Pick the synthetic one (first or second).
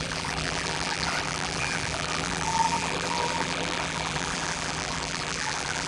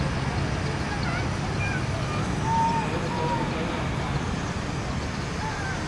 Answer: first